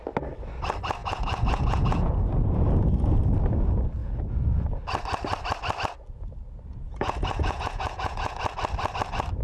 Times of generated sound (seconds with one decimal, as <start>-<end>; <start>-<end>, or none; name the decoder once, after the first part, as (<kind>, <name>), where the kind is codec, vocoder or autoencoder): 1.0-2.2 (vocoder, Vocos); 4.0-4.8; 6.7-8.4